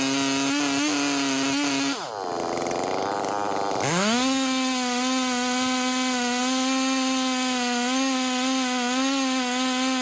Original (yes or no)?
yes